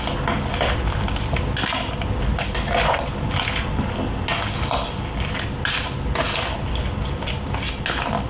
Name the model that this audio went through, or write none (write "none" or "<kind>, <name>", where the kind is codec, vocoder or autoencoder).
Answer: none